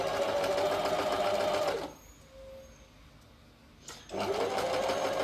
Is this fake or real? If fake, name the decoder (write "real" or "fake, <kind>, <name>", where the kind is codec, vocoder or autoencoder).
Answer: real